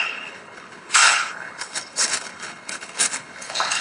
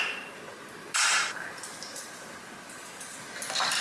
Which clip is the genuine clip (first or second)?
second